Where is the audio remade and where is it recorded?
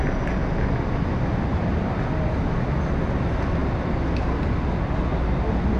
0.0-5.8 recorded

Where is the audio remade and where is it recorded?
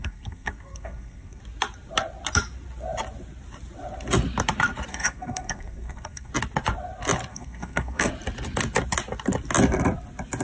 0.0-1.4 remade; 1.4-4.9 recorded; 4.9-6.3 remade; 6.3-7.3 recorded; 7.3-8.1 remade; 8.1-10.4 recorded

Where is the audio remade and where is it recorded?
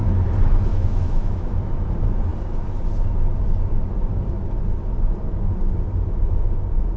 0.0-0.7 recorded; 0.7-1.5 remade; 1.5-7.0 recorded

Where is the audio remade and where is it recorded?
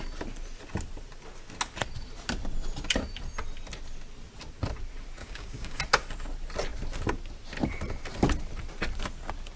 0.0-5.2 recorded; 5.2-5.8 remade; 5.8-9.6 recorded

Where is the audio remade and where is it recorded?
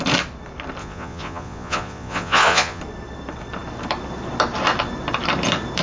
0.0-0.8 recorded; 0.8-2.8 remade; 2.8-5.8 recorded